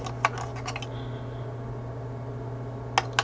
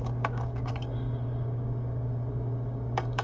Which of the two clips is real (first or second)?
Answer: first